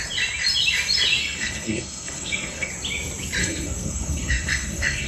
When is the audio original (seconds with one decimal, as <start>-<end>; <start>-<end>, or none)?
0.0-1.2; 2.7-3.4

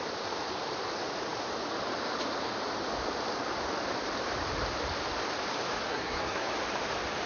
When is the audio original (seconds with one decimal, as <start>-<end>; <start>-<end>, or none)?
0.0-5.9; 6.5-7.3

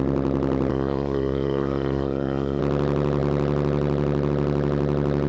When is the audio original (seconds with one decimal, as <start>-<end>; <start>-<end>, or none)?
0.0-0.7; 2.6-5.3

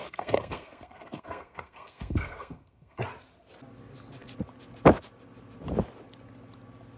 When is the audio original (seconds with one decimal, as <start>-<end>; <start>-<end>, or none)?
3.0-7.0

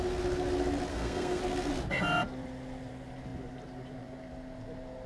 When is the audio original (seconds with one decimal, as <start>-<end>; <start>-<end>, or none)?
0.0-0.9; 1.4-5.1

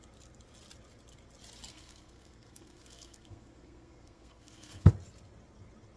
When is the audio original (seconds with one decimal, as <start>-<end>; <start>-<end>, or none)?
0.0-1.7; 4.9-6.0

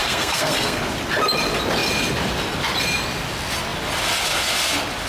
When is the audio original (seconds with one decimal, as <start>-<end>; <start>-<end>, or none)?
0.8-5.1